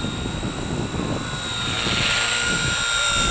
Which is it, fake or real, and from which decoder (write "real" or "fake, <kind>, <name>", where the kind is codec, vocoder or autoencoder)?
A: real